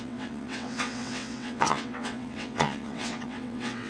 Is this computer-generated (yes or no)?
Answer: yes